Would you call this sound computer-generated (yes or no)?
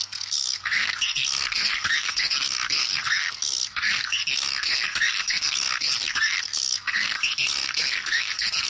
yes